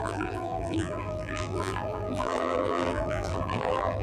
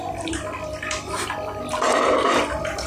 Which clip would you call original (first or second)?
second